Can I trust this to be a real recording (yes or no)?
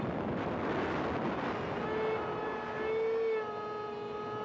yes